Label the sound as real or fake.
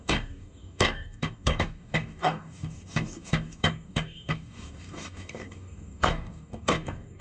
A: fake